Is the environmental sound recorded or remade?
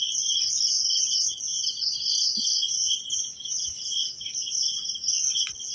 recorded